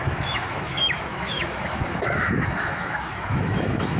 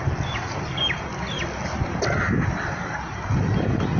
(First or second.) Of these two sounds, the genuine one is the second